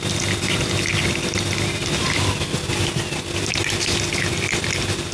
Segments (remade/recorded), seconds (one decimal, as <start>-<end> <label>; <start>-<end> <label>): 0.0-5.1 recorded